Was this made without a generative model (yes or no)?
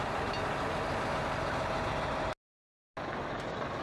yes